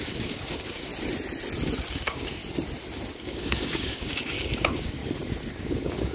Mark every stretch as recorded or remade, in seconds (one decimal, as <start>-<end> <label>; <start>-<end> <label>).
0.0-0.9 remade; 0.9-1.9 recorded; 1.9-2.4 remade; 2.4-3.1 recorded; 3.1-5.0 remade; 5.0-5.5 recorded; 5.5-6.1 remade

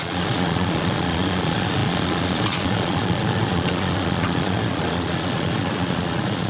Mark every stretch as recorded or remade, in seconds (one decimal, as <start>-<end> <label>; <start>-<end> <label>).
0.0-6.5 remade

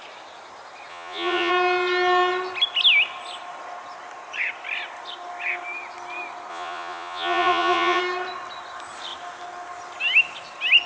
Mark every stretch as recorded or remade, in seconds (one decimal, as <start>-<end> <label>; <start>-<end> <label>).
0.0-0.9 recorded; 0.9-1.5 remade; 1.5-6.5 recorded; 6.5-8.0 remade; 8.0-10.9 recorded

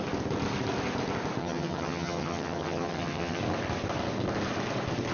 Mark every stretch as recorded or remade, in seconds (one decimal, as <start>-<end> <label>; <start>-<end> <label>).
0.0-1.4 recorded; 1.4-3.4 remade; 3.4-5.1 recorded

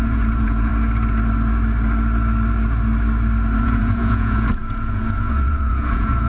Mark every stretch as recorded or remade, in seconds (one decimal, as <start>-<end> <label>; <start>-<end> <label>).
0.0-0.7 remade; 0.7-3.6 recorded; 3.6-6.3 remade

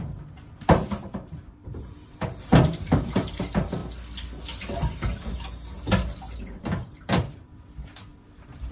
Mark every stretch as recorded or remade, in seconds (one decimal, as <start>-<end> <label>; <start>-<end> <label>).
0.0-3.8 remade; 3.8-6.6 recorded; 6.6-8.7 remade

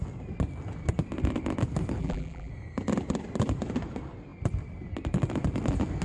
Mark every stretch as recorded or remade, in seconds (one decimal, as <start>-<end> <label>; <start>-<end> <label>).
0.0-2.0 recorded; 2.0-2.5 remade; 2.5-6.0 recorded